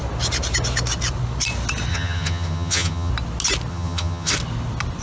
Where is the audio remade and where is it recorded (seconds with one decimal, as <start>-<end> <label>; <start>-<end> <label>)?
0.0-1.9 recorded; 1.9-3.1 remade; 3.1-3.7 recorded; 3.7-4.3 remade; 4.3-5.0 recorded